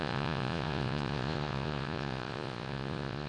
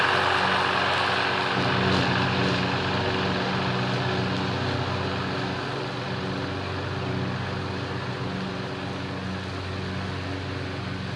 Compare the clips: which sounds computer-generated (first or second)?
first